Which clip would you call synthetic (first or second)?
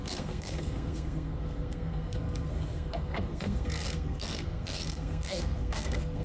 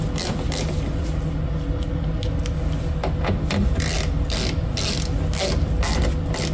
first